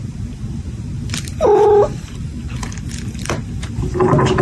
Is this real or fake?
real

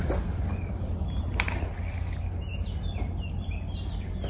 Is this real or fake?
real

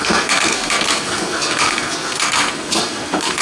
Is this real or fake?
fake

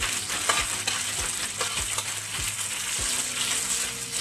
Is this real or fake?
real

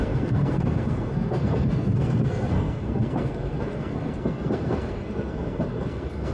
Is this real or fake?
fake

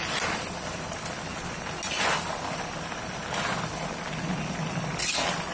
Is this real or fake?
real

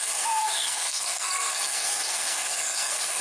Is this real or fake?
fake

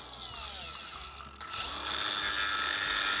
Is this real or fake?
real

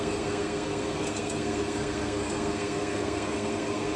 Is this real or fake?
fake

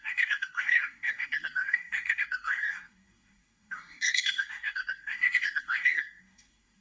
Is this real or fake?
fake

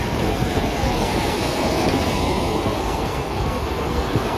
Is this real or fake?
fake